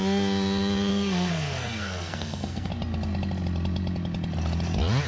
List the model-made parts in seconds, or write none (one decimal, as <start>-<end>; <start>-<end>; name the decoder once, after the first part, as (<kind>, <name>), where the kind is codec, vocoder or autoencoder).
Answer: 0.9-2.7 (codec, SNAC)